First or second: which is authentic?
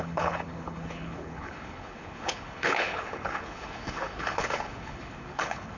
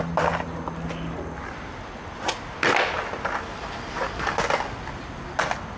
second